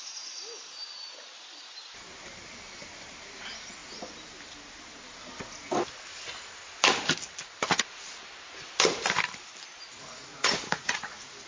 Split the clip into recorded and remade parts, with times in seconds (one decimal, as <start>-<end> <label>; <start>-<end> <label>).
0.0-9.9 recorded; 9.9-11.5 remade

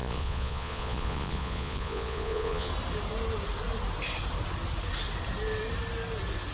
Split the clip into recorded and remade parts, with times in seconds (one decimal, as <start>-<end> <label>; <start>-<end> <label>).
0.0-2.7 remade; 2.7-6.5 recorded

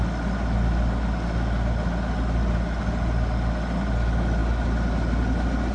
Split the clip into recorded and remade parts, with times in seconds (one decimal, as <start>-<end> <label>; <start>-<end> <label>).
0.0-5.7 recorded

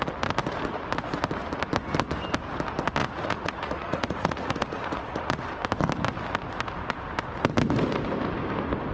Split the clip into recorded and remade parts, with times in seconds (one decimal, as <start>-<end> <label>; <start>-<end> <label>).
0.0-3.0 recorded; 3.0-5.4 remade; 5.4-8.9 recorded

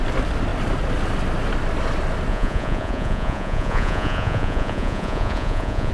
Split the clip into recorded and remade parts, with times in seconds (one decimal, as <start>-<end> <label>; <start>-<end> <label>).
0.0-2.3 recorded; 2.3-5.9 remade

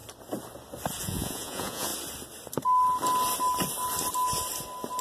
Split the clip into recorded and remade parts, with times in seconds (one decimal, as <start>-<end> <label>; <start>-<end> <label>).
0.0-1.0 recorded; 1.0-1.9 remade; 1.9-5.0 recorded

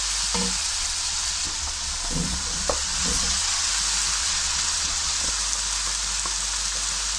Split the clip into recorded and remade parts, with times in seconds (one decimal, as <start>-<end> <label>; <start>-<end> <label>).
0.0-0.6 recorded; 0.6-3.7 remade; 3.7-4.2 recorded; 4.2-5.3 remade; 5.3-7.2 recorded

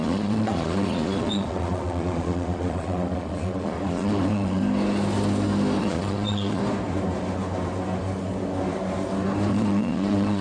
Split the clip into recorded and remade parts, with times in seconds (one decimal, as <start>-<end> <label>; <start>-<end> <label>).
0.0-4.6 remade; 4.6-5.8 recorded; 5.8-6.6 remade; 6.6-9.5 recorded; 9.5-10.4 remade